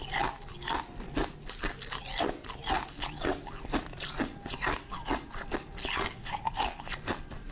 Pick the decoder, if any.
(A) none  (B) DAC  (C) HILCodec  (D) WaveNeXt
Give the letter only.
A